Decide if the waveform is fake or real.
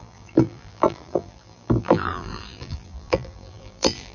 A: fake